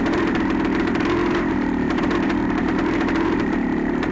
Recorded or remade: remade